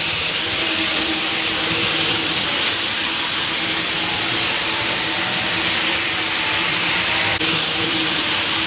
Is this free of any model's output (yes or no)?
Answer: no